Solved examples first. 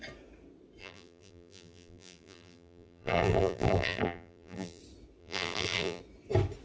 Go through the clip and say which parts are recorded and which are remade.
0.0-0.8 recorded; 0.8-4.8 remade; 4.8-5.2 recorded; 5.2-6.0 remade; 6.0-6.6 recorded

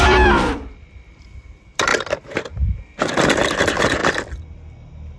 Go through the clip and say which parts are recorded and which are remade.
0.0-1.9 remade; 1.9-3.6 recorded; 3.6-4.0 remade; 4.0-5.2 recorded

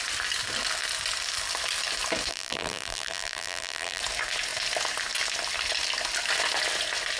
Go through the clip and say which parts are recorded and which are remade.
0.0-2.3 recorded; 2.3-4.0 remade; 4.0-7.2 recorded